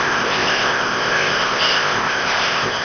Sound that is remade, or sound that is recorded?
remade